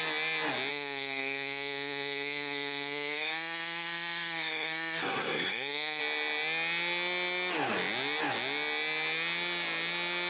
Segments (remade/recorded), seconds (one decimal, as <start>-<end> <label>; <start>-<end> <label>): 0.0-0.7 recorded; 0.7-6.0 remade; 6.0-10.3 recorded